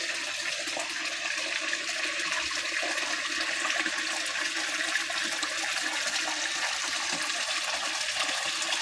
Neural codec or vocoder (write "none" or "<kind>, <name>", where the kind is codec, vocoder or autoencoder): none